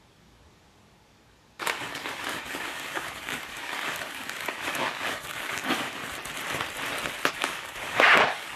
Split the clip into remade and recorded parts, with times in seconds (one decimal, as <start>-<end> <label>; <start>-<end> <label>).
0.0-6.0 remade; 6.0-7.3 recorded; 7.3-8.6 remade